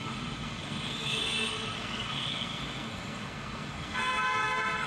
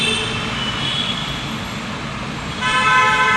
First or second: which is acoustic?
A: second